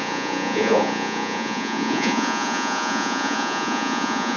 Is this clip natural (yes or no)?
no